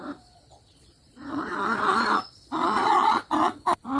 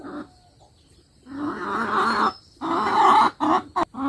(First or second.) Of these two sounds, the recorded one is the second